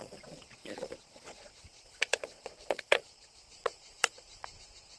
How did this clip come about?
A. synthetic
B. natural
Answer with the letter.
A